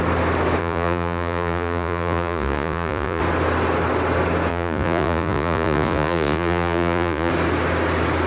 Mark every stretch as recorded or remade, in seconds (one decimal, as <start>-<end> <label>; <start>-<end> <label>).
0.0-0.6 recorded; 0.6-3.2 remade; 3.2-4.5 recorded; 4.5-7.3 remade; 7.3-8.3 recorded